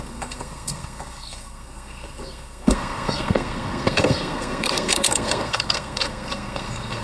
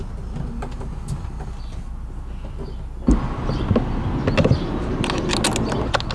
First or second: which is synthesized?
first